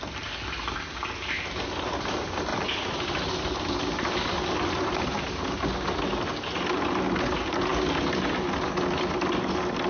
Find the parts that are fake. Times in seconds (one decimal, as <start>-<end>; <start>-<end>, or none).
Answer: none